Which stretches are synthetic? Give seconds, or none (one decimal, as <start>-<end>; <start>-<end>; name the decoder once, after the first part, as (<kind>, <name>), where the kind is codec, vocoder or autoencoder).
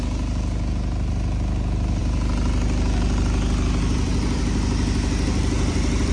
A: 2.0-6.1 (vocoder, BigVGAN v2)